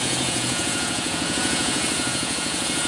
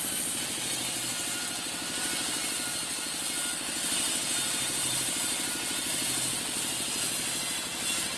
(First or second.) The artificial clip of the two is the first